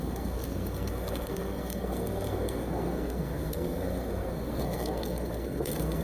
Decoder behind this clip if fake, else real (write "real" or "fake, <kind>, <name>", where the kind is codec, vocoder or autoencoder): fake, codec, SNAC